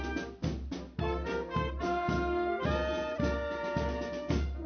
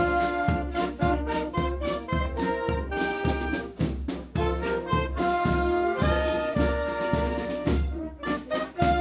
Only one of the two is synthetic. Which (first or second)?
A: second